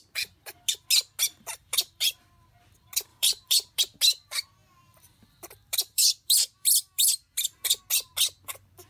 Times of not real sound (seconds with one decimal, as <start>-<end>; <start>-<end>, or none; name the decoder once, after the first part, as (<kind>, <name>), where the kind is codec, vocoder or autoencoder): 1.6-2.2 (vocoder, BigVGAN v2); 3.1-3.8; 4.6-7.8

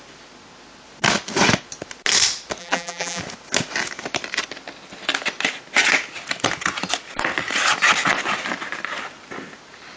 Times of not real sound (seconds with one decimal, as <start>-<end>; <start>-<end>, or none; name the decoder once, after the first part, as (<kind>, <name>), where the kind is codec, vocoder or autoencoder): 2.6-3.2 (vocoder, BigVGAN v2)

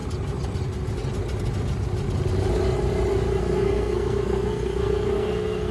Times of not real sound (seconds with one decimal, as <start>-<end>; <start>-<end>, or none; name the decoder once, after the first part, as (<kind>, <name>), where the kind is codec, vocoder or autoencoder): 3.4-5.7 (codec, SNAC)